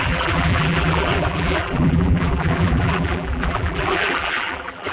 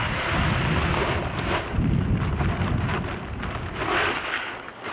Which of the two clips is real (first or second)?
second